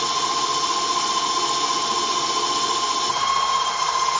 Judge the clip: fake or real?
real